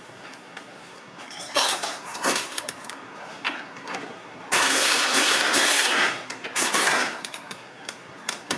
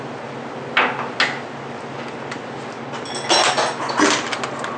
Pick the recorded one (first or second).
second